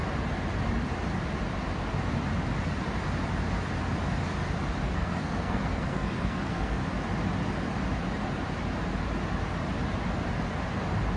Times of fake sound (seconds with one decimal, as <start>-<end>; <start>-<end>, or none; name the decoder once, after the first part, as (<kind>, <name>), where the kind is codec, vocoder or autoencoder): 4.8-6.8 (codec, SNAC)